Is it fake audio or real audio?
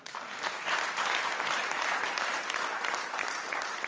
real